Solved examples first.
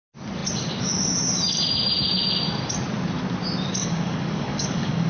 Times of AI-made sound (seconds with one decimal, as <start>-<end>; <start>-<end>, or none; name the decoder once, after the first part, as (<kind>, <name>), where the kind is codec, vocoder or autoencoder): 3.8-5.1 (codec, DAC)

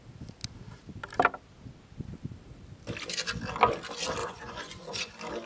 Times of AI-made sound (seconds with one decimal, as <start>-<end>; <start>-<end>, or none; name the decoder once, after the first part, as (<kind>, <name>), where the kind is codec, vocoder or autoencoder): 4.2-5.1 (vocoder, Vocos)

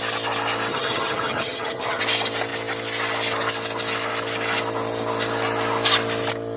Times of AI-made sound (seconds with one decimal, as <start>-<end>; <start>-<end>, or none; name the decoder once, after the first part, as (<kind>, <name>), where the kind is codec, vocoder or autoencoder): 0.7-2.0 (vocoder, HiFi-GAN)

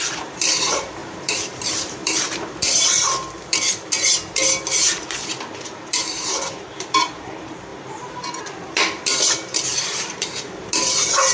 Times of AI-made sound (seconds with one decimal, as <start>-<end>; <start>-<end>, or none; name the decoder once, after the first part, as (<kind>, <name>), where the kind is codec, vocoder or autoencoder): 0.0-11.3 (vocoder, BigVGAN v2)

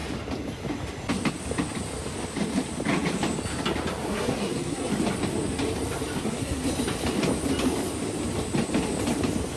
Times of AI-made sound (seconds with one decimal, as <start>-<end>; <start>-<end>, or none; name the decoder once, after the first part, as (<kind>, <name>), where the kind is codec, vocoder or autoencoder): 4.1-4.9 (codec, SNAC); 6.2-6.7

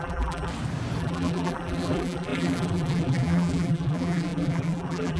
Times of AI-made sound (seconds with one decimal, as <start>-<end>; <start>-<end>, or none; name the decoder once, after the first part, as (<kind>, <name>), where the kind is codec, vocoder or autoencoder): 0.0-0.5 (vocoder, BigVGAN v2); 1.0-5.2